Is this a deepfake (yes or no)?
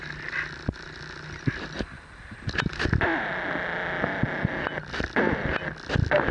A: no